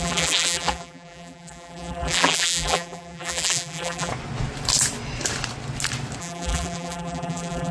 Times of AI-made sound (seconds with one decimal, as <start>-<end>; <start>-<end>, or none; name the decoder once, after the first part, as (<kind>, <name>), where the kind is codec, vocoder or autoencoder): 0.0-4.1 (vocoder, BigVGAN v2); 6.2-7.7